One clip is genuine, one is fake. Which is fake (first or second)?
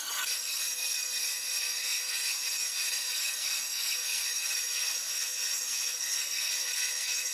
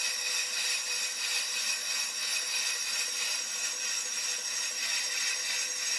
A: first